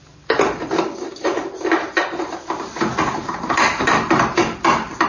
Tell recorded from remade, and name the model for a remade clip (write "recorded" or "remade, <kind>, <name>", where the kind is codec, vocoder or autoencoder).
remade, vocoder, BigVGAN v2